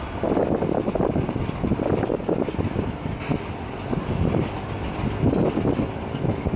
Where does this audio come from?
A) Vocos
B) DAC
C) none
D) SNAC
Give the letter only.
C